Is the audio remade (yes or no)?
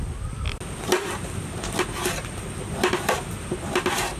no